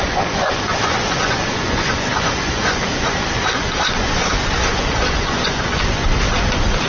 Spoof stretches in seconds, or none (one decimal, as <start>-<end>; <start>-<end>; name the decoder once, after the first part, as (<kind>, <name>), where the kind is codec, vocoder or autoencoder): 0.0-6.9 (vocoder, Vocos)